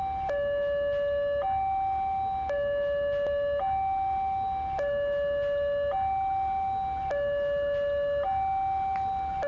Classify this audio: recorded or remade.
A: recorded